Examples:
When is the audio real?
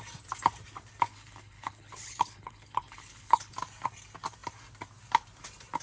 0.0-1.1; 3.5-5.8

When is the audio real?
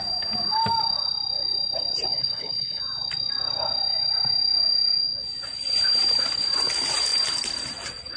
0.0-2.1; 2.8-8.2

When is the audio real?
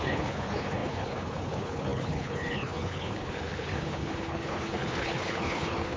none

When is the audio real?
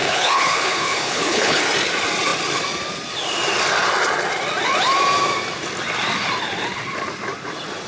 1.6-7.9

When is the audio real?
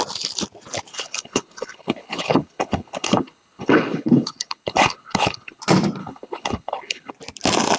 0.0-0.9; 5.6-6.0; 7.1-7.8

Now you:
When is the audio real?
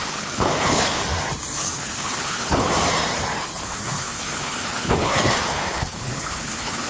1.0-1.6; 2.7-3.5